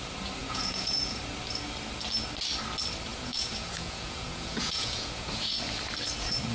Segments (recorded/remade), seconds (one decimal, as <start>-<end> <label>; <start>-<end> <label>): 0.0-0.4 recorded; 0.4-1.2 remade; 1.2-3.1 recorded; 3.1-5.6 remade; 5.6-6.5 recorded